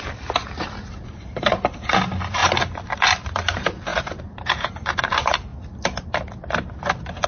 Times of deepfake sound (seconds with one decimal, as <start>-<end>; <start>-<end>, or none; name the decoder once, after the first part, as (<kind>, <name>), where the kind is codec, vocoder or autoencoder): 0.0-2.4 (vocoder, BigVGAN v2); 3.3-5.5; 6.0-7.3